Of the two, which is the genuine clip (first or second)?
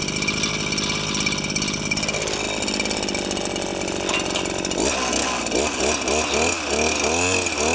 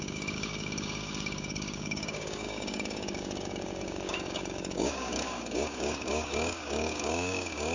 first